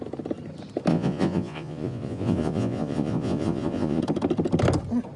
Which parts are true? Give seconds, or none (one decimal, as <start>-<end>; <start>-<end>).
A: 0.0-0.9; 4.0-5.2